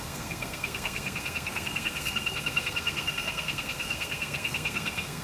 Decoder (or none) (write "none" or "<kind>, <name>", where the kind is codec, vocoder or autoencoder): codec, SNAC